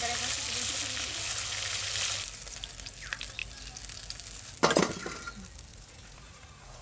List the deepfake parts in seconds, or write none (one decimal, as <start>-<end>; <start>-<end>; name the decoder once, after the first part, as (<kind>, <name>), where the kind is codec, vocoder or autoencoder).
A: 5.7-6.8 (vocoder, Vocos)